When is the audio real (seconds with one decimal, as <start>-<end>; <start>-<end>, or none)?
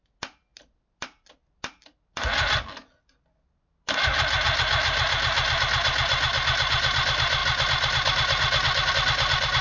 0.0-9.6